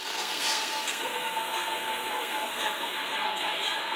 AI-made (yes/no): yes